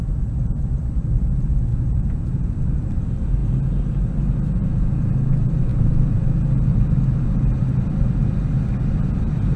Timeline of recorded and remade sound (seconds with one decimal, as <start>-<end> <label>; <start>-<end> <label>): 0.0-1.7 recorded; 1.7-2.5 remade; 2.5-9.6 recorded